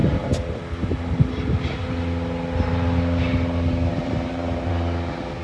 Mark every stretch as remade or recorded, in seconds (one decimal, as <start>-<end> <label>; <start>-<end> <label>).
0.0-3.9 recorded; 3.9-4.7 remade; 4.7-5.4 recorded